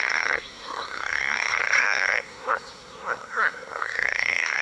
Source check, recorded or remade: remade